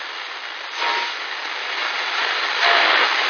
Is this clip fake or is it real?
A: real